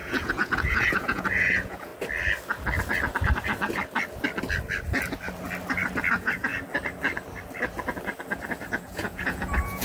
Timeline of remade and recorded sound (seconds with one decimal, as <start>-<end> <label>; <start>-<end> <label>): 0.0-1.9 remade; 1.9-6.1 recorded; 6.1-6.5 remade; 6.5-8.7 recorded; 8.7-9.8 remade